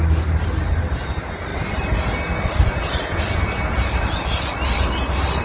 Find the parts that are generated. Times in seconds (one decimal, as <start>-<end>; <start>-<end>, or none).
none

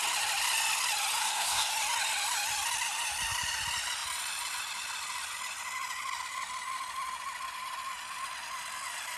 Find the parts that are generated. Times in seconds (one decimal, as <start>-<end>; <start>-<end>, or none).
1.2-1.7

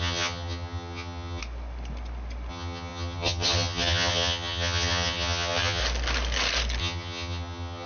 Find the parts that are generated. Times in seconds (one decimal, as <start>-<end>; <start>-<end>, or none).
0.0-1.4; 2.5-5.8; 6.8-7.9

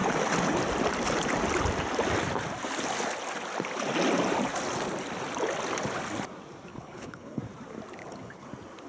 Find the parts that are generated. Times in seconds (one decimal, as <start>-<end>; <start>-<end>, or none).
6.7-7.4; 8.0-8.5